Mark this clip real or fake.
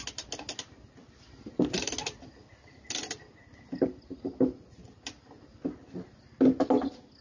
real